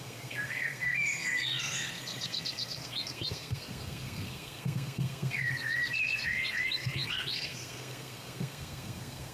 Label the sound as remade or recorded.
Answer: remade